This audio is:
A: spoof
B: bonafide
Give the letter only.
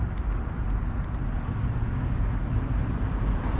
B